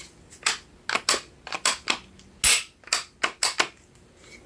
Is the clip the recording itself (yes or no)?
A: yes